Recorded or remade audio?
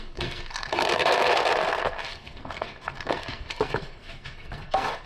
remade